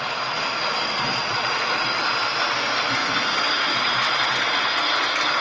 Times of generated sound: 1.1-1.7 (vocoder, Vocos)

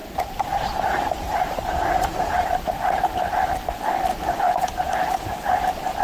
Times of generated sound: 0.0-3.6 (vocoder, BigVGAN v2); 4.1-6.0

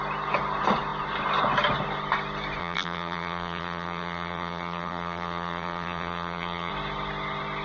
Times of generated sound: 2.6-6.7 (vocoder, BigVGAN v2)

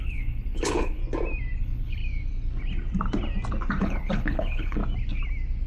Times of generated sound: 0.0-1.0 (codec, HILCodec); 1.6-2.0; 3.8-4.8

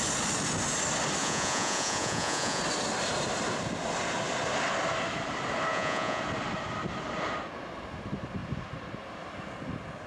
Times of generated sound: 1.2-2.6 (vocoder, Vocos); 5.7-6.2

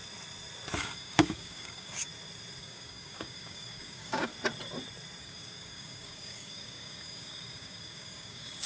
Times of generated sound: 0.8-2.1 (codec, DAC); 2.6-4.3; 5.2-8.7